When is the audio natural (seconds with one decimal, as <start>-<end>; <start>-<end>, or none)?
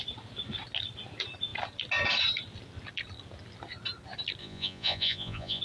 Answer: 0.0-4.4